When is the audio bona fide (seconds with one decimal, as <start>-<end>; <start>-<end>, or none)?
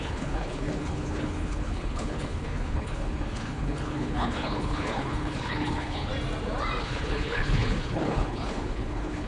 6.1-6.8